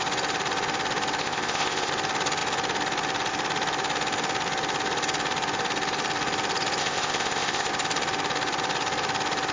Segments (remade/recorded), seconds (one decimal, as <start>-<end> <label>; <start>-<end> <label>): 0.0-1.2 recorded; 1.2-1.9 remade; 1.9-6.8 recorded; 6.8-7.7 remade; 7.7-9.5 recorded